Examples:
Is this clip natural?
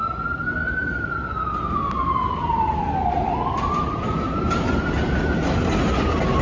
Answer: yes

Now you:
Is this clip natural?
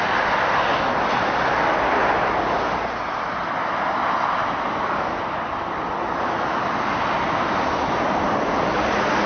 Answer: yes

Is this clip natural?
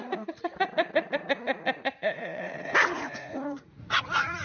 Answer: no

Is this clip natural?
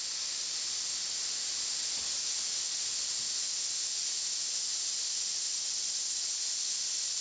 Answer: yes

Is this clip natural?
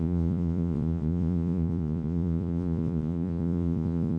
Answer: no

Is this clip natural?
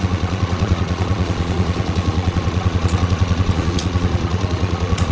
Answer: no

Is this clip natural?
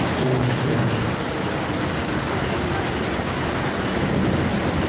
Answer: yes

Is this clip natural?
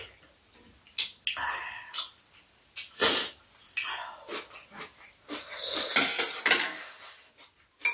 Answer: yes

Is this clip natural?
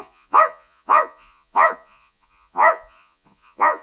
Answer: no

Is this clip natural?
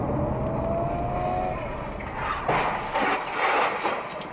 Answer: yes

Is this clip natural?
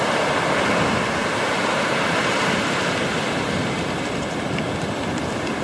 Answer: yes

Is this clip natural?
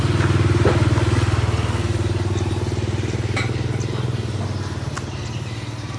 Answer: yes